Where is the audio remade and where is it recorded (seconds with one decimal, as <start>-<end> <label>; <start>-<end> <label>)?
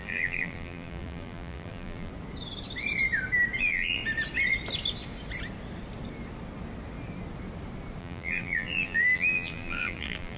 0.0-2.1 remade; 2.1-3.6 recorded; 3.6-4.0 remade; 4.0-8.0 recorded; 8.0-10.4 remade